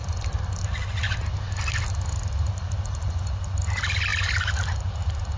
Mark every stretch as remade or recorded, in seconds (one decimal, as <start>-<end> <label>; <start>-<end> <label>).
0.0-5.4 recorded

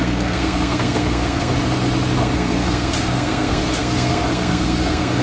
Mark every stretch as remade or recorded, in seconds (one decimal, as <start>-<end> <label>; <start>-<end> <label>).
0.0-1.5 remade; 1.5-2.2 recorded; 2.2-5.2 remade

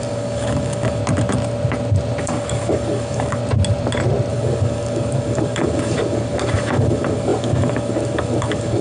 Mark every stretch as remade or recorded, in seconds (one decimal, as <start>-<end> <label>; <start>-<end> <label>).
0.0-1.0 remade; 1.0-2.2 recorded; 2.2-3.4 remade; 3.4-4.3 recorded; 4.3-8.8 remade

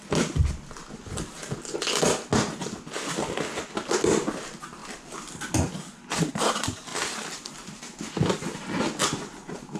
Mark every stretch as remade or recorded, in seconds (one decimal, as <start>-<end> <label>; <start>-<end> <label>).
0.0-9.8 recorded

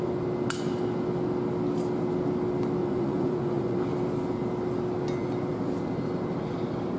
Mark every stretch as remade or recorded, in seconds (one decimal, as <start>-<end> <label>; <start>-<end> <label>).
0.0-2.8 recorded; 2.8-3.8 remade; 3.8-7.0 recorded